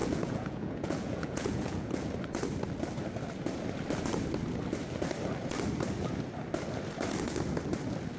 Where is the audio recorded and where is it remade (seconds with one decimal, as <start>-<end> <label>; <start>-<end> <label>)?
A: 0.0-2.1 remade; 2.1-8.2 recorded